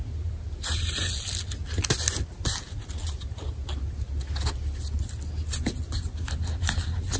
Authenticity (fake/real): real